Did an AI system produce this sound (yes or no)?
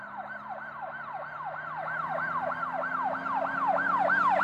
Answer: no